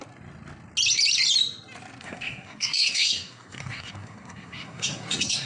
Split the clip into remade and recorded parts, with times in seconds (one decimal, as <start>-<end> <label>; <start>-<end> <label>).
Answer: 0.0-2.0 recorded; 2.0-5.5 remade